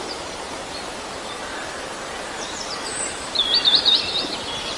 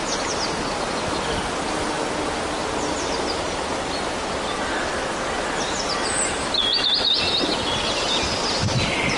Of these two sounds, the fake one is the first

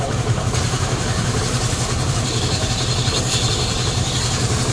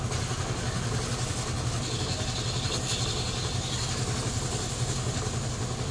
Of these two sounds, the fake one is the first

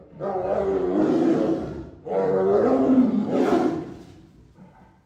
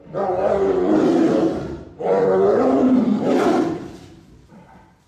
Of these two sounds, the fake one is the second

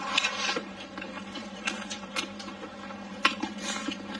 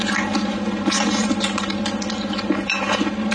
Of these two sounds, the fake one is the first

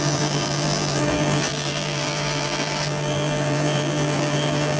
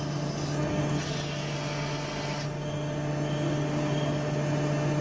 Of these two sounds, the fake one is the first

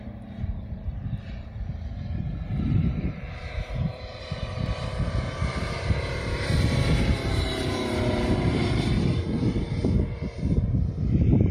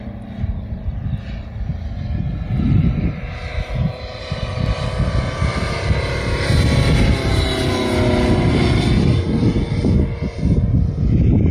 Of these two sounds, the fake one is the first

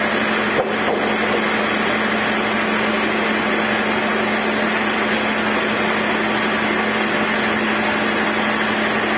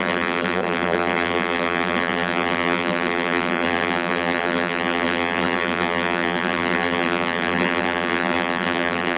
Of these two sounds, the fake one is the second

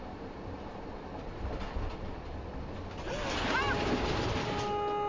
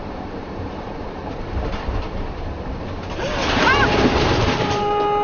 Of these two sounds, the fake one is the second